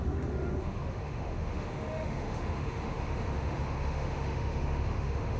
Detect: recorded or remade remade